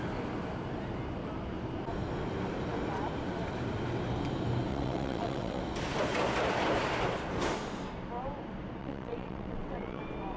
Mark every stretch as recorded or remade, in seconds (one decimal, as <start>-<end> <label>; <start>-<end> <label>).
0.0-4.7 recorded; 4.7-5.6 remade; 5.6-8.8 recorded; 8.8-10.0 remade; 10.0-10.4 recorded